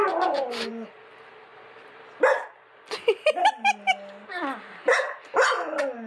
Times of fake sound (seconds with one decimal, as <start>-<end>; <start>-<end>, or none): none